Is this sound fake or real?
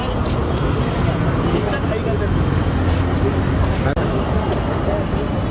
real